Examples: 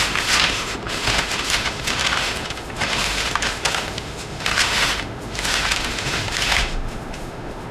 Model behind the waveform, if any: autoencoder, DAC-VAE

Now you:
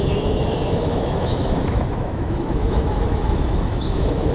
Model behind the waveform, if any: autoencoder, DAC-VAE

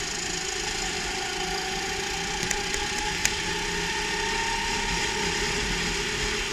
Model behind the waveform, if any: none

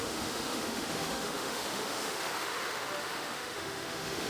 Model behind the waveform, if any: autoencoder, DAC-VAE